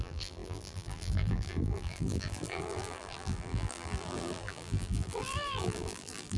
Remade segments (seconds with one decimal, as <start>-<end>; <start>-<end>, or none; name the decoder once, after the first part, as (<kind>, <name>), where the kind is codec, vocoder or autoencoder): 0.0-6.4 (vocoder, BigVGAN v2)